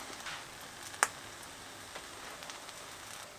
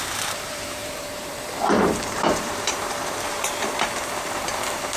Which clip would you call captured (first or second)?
first